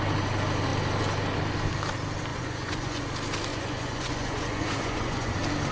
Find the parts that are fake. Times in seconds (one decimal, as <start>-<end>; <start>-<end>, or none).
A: 2.3-3.1; 3.5-5.3